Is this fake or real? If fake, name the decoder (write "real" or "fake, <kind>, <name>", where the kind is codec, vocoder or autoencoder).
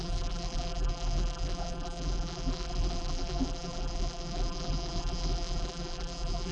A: fake, vocoder, BigVGAN v2